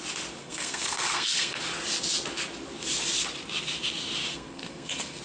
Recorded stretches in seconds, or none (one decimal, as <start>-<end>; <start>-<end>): 0.0-0.4; 1.6-4.3